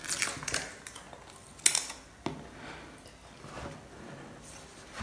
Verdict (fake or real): real